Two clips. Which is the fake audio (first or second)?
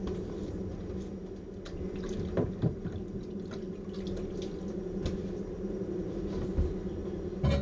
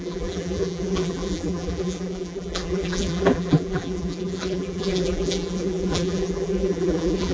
second